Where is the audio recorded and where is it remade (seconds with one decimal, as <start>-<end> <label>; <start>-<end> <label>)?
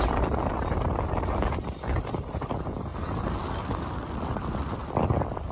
0.0-2.9 remade; 2.9-5.5 recorded